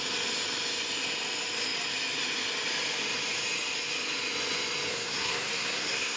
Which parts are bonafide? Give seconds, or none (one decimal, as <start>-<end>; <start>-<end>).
0.0-4.9